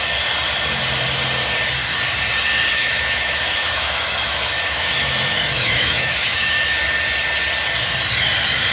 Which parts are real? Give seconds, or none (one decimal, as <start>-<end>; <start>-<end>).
0.0-2.7; 6.8-8.7